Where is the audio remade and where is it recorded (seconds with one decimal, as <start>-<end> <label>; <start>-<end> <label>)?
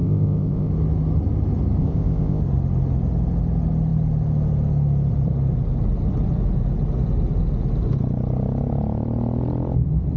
0.0-0.7 remade; 0.7-1.8 recorded; 1.8-2.4 remade; 2.4-10.2 recorded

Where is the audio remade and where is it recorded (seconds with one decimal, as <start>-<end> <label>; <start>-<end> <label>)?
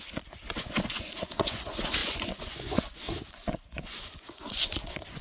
0.0-5.2 remade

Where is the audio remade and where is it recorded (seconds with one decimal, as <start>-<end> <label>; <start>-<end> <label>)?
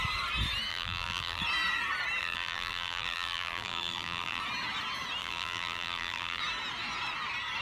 0.0-0.7 recorded; 0.7-1.4 remade; 1.4-2.2 recorded; 2.2-4.4 remade; 4.4-5.2 recorded; 5.2-6.4 remade; 6.4-7.6 recorded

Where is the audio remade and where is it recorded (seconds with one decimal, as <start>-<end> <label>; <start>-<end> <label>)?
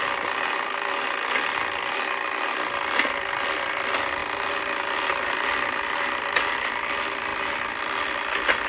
0.0-8.7 recorded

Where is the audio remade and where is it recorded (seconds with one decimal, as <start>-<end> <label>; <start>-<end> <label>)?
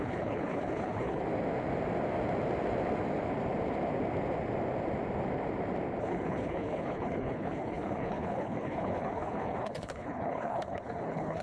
0.0-1.2 remade; 1.2-6.0 recorded; 6.0-11.4 remade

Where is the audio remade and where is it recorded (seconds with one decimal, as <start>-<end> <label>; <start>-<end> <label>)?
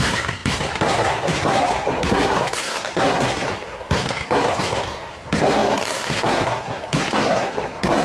0.0-8.0 remade